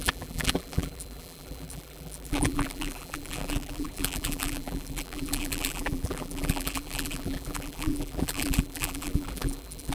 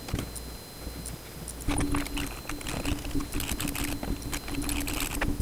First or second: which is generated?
first